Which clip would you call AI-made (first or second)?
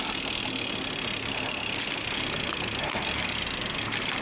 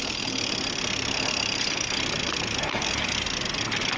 second